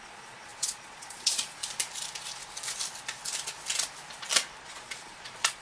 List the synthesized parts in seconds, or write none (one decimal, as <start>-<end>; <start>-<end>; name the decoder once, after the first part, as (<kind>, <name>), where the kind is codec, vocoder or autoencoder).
0.0-1.6 (vocoder, Vocos); 4.6-5.6